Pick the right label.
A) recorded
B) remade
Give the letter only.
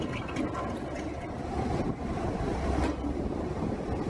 A